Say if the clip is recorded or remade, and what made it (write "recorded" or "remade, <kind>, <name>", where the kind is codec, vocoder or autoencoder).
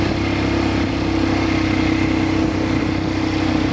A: recorded